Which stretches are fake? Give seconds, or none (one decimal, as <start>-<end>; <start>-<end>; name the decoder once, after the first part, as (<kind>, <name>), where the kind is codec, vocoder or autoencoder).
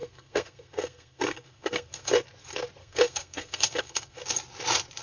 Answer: 0.0-2.1 (codec, SNAC); 2.8-4.2